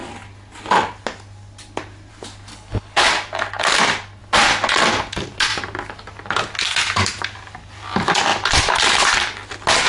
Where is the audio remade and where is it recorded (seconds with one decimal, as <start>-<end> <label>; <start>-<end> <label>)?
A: 0.0-2.5 recorded; 2.5-3.1 remade; 3.1-9.9 recorded